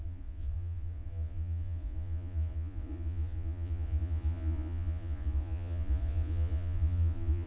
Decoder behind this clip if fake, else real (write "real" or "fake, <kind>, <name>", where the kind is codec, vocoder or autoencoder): fake, vocoder, Vocos